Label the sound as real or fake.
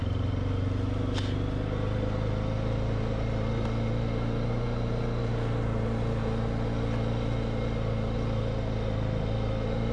real